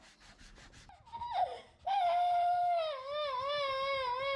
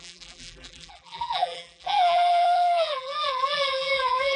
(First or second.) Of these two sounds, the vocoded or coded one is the second